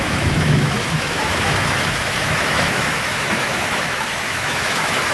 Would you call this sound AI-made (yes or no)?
yes